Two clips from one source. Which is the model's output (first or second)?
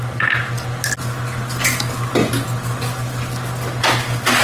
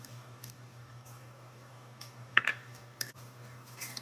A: second